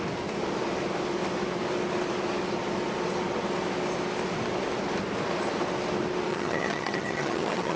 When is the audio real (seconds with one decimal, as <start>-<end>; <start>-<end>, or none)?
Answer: 0.0-6.3